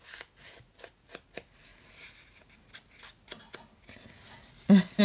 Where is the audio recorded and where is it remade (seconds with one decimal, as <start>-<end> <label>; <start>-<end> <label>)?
0.0-5.0 recorded